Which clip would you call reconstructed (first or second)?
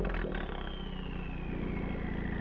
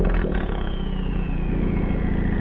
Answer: second